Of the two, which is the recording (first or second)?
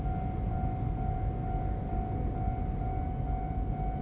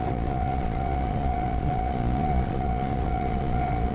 first